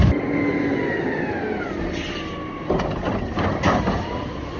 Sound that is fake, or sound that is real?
real